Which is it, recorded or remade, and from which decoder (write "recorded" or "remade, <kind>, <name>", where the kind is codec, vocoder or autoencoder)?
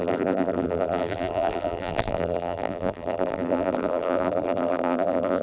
remade, vocoder, BigVGAN v2